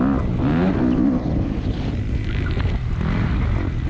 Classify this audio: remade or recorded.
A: recorded